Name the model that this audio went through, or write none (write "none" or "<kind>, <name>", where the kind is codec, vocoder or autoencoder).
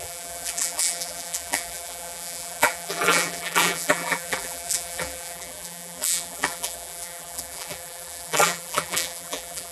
vocoder, BigVGAN v2